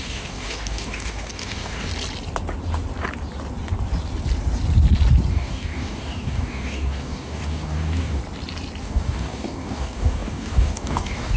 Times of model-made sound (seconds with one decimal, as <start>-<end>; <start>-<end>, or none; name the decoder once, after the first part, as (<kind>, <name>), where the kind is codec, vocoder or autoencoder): 0.0-1.9 (codec, DAC); 5.3-8.2; 8.8-11.4